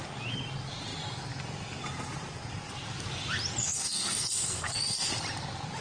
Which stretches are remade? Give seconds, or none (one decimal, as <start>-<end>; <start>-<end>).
3.6-5.1